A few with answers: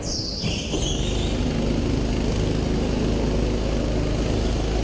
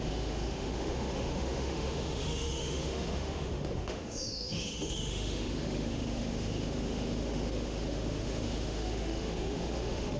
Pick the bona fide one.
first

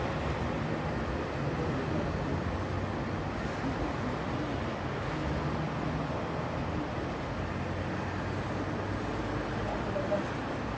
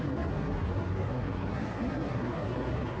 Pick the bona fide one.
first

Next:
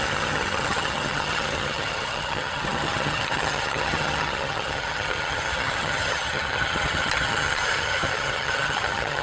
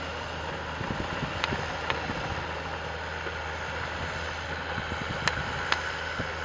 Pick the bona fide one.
second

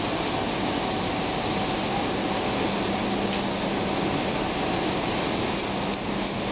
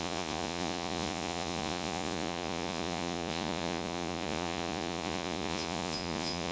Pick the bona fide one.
first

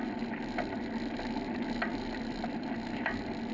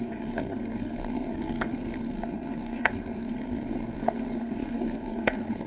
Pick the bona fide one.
first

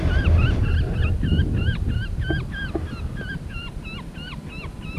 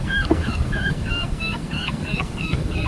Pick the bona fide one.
first